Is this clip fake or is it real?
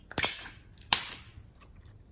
real